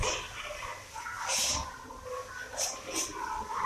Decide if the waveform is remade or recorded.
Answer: recorded